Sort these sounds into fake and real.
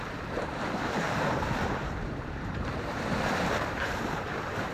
fake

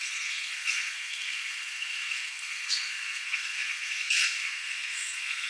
fake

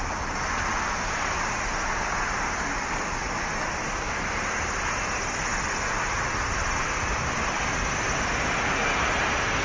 real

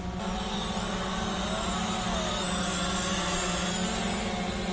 real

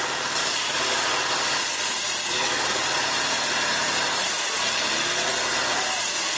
real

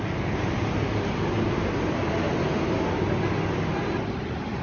real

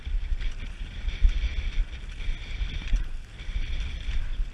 real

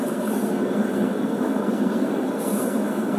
fake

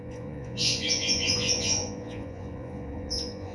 fake